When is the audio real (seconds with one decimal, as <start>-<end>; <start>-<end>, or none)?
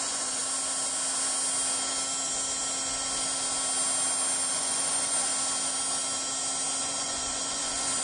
0.4-4.5; 5.3-6.8